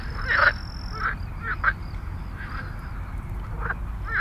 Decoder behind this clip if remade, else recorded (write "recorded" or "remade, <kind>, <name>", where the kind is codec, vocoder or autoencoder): recorded